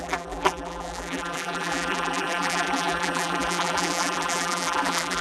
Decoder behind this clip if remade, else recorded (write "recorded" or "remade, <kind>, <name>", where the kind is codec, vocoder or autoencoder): remade, vocoder, BigVGAN v2